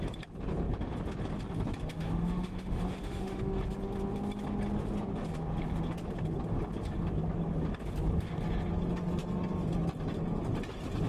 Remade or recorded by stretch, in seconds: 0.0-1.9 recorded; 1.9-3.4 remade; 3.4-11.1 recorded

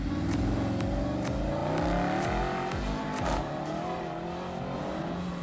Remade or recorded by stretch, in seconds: 0.0-5.4 recorded

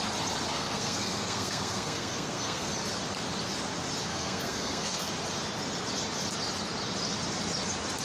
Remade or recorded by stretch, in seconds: 0.0-0.5 recorded; 0.5-2.7 remade; 2.7-4.1 recorded; 4.1-5.1 remade; 5.1-8.0 recorded